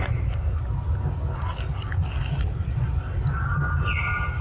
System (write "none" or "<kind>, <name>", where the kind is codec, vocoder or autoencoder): none